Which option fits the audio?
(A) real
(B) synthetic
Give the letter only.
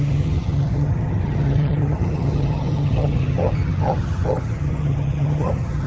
B